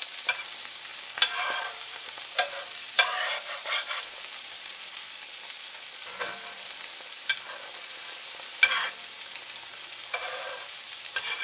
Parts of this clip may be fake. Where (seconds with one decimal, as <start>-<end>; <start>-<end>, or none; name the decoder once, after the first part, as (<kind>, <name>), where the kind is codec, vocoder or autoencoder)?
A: 0.0-4.7 (vocoder, BigVGAN v2); 9.9-11.4